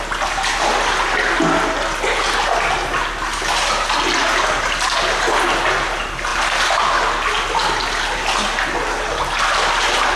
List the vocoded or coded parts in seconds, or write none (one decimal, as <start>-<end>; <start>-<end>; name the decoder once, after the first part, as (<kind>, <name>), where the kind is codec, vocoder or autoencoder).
none